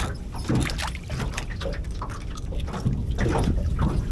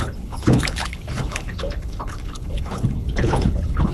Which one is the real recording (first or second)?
first